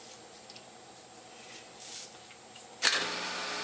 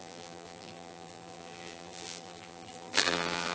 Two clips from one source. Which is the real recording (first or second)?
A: first